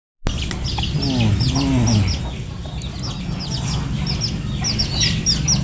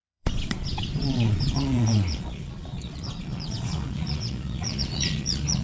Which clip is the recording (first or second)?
first